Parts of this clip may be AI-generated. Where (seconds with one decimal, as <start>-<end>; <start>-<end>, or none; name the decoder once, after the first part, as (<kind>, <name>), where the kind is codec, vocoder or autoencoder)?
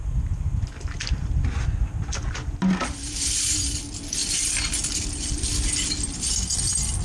none